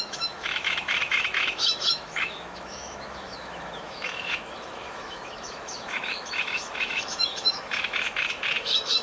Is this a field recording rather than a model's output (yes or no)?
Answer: no